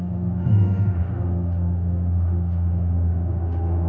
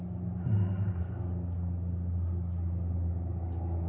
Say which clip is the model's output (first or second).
first